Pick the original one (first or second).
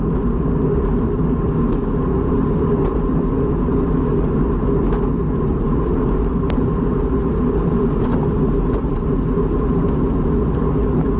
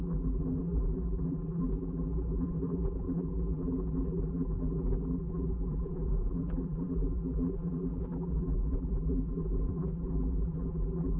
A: first